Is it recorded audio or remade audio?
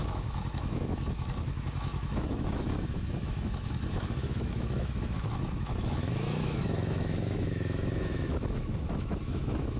remade